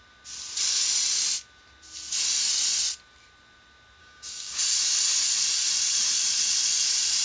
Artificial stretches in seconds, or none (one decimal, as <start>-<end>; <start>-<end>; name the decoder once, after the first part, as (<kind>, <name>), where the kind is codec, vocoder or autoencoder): 4.0-4.6 (codec, DAC)